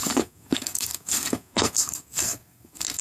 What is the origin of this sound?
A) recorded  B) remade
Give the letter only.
B